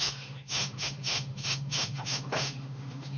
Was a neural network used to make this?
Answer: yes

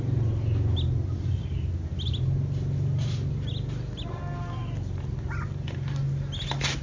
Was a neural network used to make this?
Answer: no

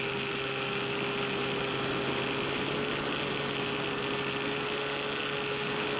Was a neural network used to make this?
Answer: no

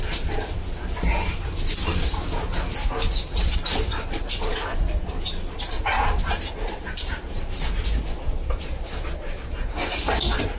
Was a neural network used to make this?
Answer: no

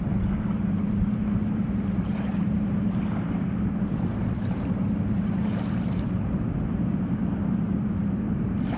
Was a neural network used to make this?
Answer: yes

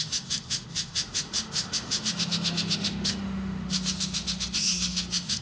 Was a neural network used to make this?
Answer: yes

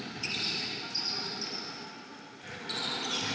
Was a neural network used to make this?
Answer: no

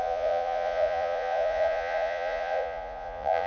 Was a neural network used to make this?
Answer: yes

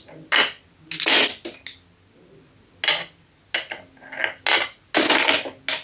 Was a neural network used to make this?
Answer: no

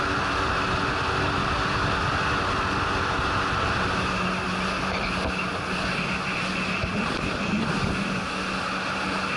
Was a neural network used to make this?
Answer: no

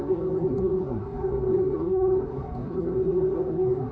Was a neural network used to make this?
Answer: yes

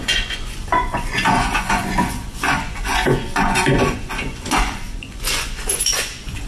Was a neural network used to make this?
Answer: yes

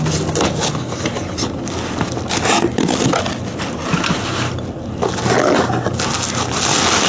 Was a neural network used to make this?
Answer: no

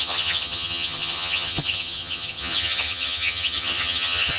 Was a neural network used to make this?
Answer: yes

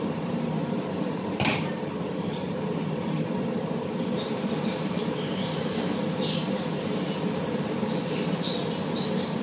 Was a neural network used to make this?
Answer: yes